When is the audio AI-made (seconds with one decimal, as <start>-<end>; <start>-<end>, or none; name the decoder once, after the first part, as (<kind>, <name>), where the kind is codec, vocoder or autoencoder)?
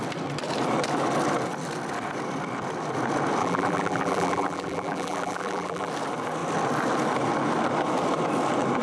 3.4-5.9 (vocoder, BigVGAN v2)